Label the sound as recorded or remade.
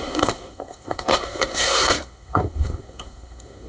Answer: remade